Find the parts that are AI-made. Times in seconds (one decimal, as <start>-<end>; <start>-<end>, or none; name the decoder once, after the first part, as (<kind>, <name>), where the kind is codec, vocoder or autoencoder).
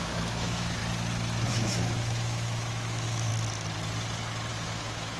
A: 0.0-0.8 (autoencoder, DAC-VAE); 1.5-3.3; 4.5-5.2